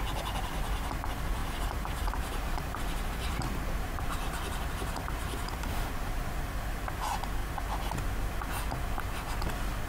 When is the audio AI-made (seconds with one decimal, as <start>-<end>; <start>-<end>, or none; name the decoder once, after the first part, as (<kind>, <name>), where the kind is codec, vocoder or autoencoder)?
1.4-6.3 (vocoder, BigVGAN v2)